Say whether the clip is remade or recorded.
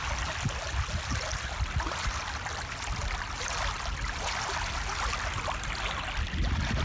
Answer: recorded